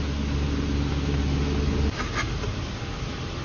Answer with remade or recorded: recorded